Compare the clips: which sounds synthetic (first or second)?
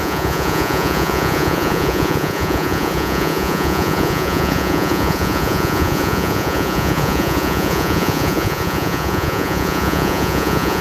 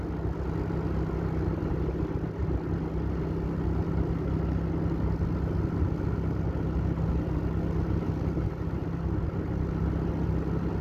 first